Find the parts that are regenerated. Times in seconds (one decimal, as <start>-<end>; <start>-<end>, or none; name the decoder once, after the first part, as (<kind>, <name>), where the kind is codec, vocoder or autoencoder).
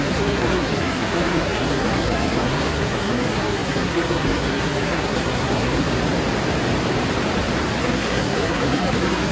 0.0-5.9 (codec, SNAC); 7.8-9.3